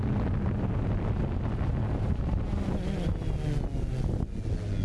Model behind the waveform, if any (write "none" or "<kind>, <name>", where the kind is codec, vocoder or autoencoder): none